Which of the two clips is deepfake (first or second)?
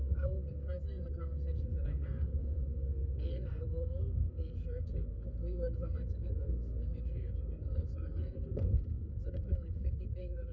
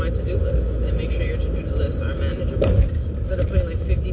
first